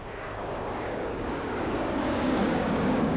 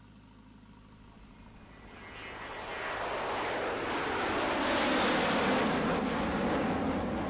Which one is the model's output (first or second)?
first